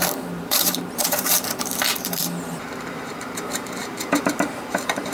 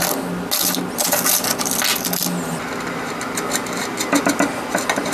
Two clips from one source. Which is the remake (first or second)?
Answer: first